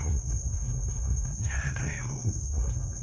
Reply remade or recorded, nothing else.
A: remade